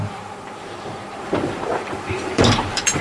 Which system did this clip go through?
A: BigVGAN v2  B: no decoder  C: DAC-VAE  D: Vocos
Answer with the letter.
A